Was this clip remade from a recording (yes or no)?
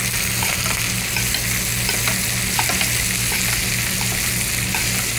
no